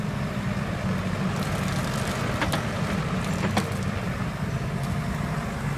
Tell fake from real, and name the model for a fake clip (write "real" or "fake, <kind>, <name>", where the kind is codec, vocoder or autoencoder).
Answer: real